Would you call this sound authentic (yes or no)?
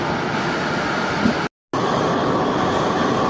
yes